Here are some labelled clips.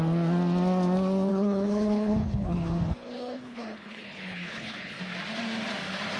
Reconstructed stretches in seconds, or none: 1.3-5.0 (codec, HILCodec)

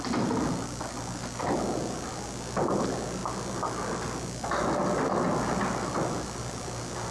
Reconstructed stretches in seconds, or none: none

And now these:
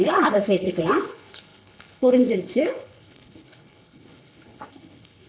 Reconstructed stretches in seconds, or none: 0.0-5.3 (codec, HILCodec)

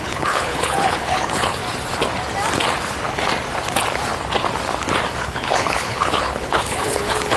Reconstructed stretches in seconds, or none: 0.0-1.6 (codec, HILCodec); 5.2-7.4

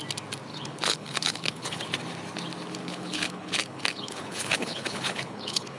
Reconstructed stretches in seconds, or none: 0.5-1.8 (codec, HILCodec); 2.8-5.8

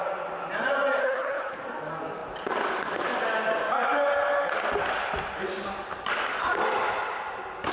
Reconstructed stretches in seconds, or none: 1.0-1.6 (codec, HILCodec)

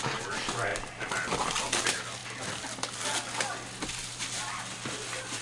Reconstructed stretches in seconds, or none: none